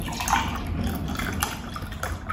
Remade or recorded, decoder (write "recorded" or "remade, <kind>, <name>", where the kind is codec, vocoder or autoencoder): recorded